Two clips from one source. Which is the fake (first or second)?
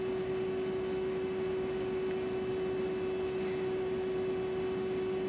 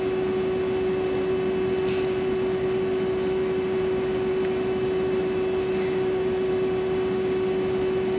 second